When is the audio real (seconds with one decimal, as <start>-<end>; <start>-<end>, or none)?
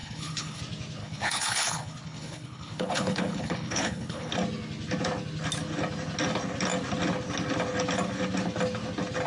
0.6-1.0; 4.3-9.3